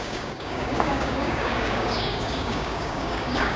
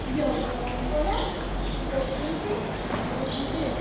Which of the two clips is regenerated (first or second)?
first